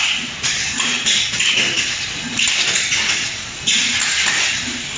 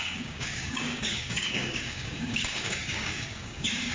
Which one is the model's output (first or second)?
second